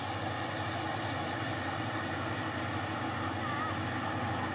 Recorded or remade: recorded